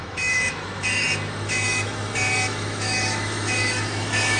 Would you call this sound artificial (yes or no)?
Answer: yes